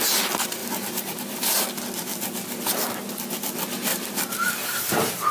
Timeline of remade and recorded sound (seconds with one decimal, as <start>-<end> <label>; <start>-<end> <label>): 0.0-0.6 recorded; 0.6-1.6 remade; 1.6-3.9 recorded; 3.9-4.8 remade; 4.8-5.3 recorded